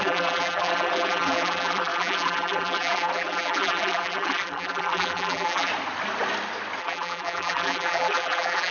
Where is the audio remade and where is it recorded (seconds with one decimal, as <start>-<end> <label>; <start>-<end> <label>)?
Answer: 0.0-5.7 remade; 5.7-6.8 recorded; 6.8-8.7 remade